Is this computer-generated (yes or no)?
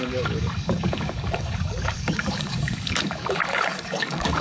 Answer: yes